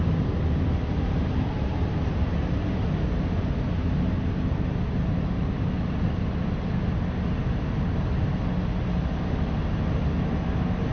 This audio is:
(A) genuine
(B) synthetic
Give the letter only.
A